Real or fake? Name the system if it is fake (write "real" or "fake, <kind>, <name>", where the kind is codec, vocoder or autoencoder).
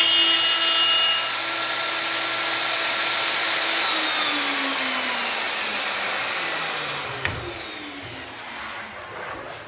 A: real